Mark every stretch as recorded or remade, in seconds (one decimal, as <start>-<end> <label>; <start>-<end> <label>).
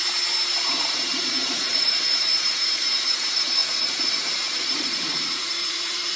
0.0-1.5 recorded; 1.5-6.2 remade